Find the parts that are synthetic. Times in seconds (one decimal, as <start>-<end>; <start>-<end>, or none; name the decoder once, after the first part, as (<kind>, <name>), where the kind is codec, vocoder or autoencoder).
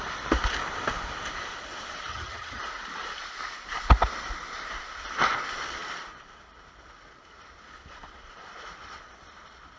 2.1-2.6 (vocoder, HiFi-GAN)